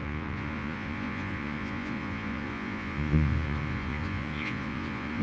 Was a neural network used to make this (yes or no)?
yes